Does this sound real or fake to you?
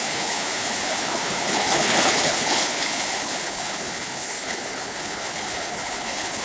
fake